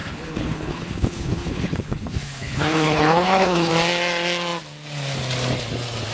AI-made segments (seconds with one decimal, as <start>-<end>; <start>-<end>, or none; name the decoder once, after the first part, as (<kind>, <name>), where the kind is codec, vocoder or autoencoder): 0.0-3.7 (codec, HILCodec)

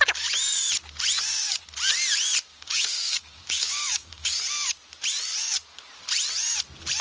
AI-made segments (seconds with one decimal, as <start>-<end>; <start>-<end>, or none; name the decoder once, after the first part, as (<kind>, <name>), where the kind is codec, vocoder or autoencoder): 2.5-4.4 (codec, DAC)

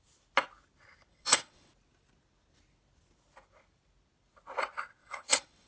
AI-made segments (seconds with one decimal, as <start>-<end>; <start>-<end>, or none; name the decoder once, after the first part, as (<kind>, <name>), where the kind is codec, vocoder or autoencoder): 1.1-1.7 (vocoder, WaveNeXt); 5.0-5.7

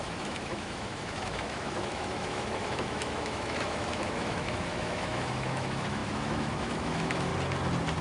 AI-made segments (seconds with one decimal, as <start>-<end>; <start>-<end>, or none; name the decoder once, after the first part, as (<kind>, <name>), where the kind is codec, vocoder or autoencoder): 0.0-7.3 (autoencoder, DAC-VAE)

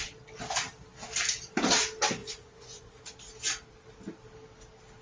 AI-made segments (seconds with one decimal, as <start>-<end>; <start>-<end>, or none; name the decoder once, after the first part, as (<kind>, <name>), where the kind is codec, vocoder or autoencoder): 2.2-3.0 (vocoder, Vocos)

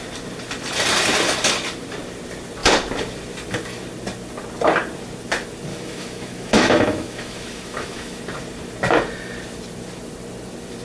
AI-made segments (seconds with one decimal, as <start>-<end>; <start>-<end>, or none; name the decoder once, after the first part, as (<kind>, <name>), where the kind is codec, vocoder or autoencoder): 5.7-8.2 (autoencoder, DAC-VAE)

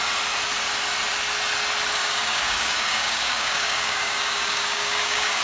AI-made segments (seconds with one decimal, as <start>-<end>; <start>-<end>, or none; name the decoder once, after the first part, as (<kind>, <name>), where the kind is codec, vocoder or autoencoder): 2.0-5.4 (codec, DAC)

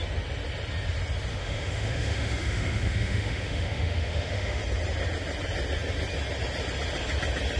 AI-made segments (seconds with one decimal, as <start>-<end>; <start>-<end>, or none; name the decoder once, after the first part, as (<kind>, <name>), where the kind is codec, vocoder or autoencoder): 1.3-4.6 (autoencoder, DAC-VAE)